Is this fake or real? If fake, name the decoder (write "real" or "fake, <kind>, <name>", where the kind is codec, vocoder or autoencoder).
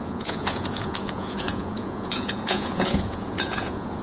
fake, vocoder, Vocos